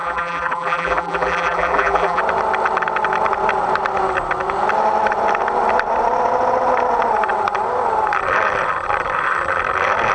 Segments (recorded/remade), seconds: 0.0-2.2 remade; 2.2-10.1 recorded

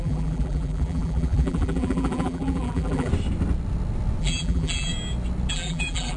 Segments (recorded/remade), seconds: 0.0-3.1 remade; 3.1-4.2 recorded; 4.2-4.9 remade; 4.9-5.5 recorded; 5.5-6.2 remade